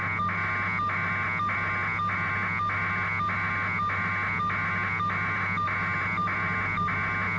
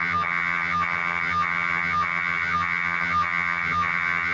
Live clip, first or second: first